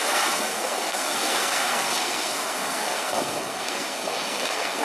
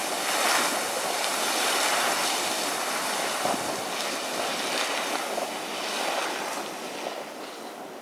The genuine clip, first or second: second